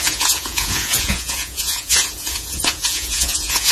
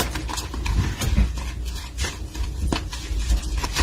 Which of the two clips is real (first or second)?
second